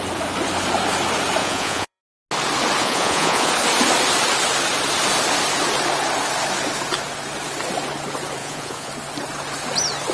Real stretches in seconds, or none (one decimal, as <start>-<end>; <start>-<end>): 0.0-1.4; 2.0-2.8; 3.5-8.4; 8.9-10.1